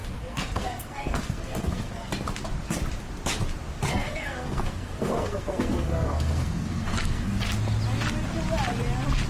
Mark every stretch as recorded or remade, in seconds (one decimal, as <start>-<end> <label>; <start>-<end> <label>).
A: 0.0-2.1 remade; 2.1-3.9 recorded; 3.9-7.4 remade; 7.4-9.3 recorded